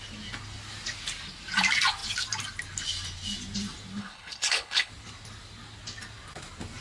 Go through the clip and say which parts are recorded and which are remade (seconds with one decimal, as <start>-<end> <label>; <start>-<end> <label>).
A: 0.0-4.0 recorded; 4.0-4.9 remade; 4.9-6.8 recorded

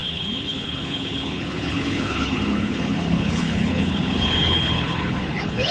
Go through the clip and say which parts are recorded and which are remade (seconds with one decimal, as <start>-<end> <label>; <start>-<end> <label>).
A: 0.0-5.7 remade